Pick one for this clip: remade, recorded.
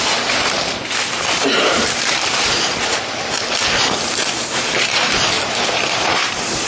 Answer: recorded